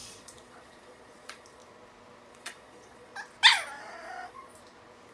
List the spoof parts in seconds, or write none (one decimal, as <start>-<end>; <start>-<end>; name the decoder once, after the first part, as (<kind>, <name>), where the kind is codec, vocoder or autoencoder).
0.0-1.6 (vocoder, Vocos); 2.3-3.1; 3.7-4.5